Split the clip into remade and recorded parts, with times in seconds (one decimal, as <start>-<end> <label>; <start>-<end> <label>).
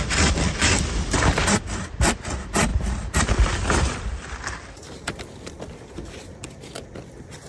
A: 0.0-2.7 remade; 2.7-3.3 recorded; 3.3-7.5 remade